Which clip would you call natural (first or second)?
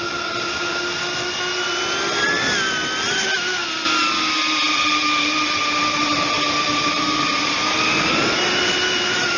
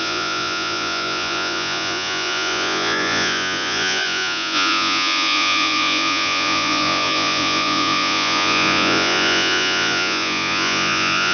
first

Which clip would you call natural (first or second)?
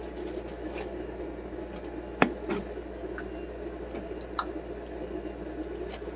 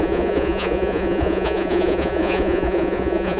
first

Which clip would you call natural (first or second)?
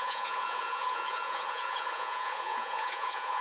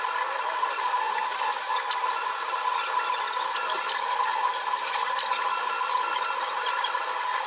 second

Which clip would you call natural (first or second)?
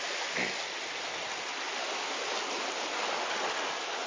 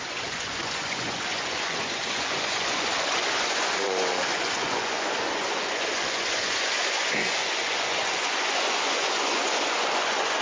first